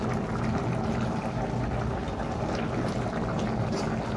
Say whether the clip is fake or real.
real